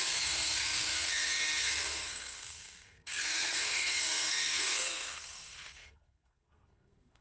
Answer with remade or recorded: remade